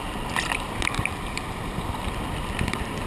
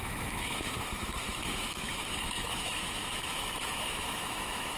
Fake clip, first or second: second